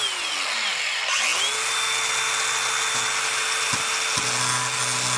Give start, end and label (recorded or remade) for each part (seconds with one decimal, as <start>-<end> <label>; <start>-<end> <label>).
0.0-5.2 recorded